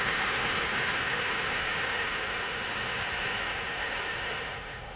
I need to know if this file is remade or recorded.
remade